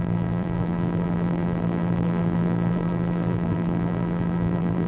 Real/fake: fake